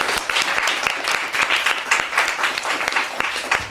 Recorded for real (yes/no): yes